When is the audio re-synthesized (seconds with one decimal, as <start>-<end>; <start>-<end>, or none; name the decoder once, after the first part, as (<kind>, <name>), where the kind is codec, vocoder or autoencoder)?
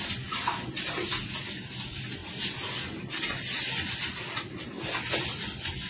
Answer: none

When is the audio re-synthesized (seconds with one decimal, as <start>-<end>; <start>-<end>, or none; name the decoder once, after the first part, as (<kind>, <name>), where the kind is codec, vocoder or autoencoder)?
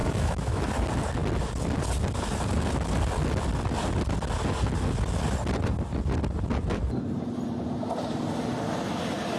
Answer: 0.0-0.7 (autoencoder, DAC-VAE)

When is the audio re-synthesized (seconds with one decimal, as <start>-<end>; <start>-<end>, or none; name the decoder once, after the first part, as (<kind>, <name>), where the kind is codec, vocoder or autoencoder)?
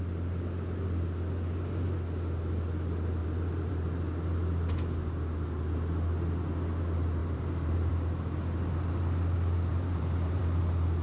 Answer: 3.2-3.7 (vocoder, BigVGAN v2); 7.2-7.9; 9.7-10.4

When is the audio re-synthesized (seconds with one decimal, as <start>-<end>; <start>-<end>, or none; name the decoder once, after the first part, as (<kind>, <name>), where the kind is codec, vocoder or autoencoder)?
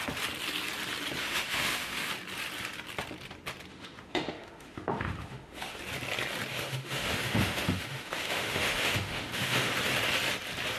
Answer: 1.2-2.1 (autoencoder, DAC-VAE); 3.7-5.8; 6.5-9.7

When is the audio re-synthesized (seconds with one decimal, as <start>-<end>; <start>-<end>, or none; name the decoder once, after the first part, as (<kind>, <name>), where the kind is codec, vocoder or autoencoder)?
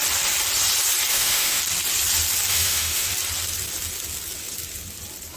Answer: 1.1-1.6 (autoencoder, DAC-VAE); 2.5-3.1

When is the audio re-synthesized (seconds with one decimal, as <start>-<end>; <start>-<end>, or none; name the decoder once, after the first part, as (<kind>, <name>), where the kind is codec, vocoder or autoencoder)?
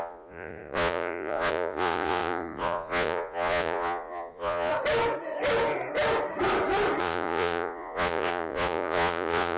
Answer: 0.0-4.7 (vocoder, Vocos); 7.0-9.6